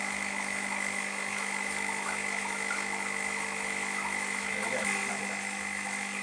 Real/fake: fake